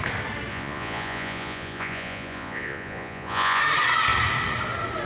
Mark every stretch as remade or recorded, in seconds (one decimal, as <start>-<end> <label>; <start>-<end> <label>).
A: 0.0-0.5 recorded; 0.5-3.6 remade; 3.6-5.1 recorded